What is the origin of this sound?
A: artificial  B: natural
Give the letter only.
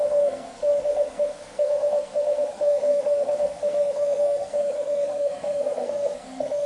A